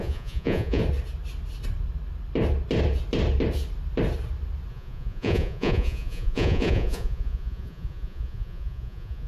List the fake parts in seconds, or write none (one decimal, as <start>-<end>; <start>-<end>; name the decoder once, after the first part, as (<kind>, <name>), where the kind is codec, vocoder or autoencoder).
0.0-0.8 (vocoder, Vocos); 4.7-9.3